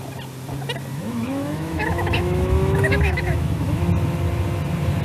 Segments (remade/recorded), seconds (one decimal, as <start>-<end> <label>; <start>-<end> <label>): 0.0-0.9 recorded; 0.9-3.9 remade; 3.9-5.0 recorded

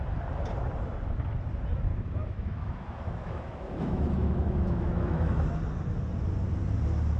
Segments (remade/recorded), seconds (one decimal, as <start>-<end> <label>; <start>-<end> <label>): 0.0-1.9 recorded; 1.9-5.5 remade; 5.5-7.2 recorded

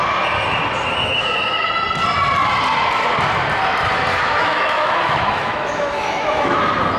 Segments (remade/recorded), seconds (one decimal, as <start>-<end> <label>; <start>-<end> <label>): 0.0-1.0 recorded; 1.0-1.7 remade; 1.7-4.1 recorded; 4.1-6.6 remade; 6.6-7.0 recorded